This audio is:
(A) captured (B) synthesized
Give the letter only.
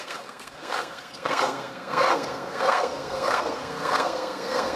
B